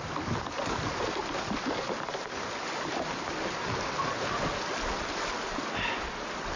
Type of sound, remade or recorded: recorded